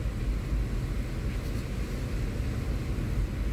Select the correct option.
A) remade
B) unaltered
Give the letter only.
B